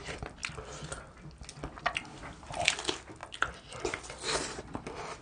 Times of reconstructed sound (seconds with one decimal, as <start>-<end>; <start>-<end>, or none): 0.0-0.4; 2.2-3.2; 4.6-5.2